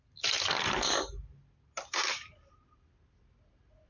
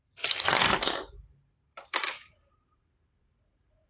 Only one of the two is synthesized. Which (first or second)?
second